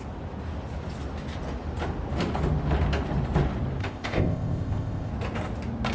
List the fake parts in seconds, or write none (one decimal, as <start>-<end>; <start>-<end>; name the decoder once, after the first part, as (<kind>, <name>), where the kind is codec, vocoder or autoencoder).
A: 3.8-5.1 (codec, ZipCodec)